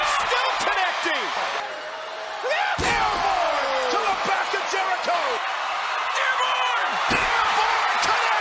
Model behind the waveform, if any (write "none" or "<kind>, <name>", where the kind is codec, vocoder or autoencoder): none